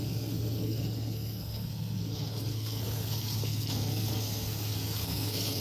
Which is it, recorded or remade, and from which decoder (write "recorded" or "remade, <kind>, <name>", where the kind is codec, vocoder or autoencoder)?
remade, codec, SNAC